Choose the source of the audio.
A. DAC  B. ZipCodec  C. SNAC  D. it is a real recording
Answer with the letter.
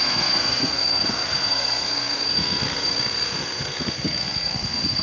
C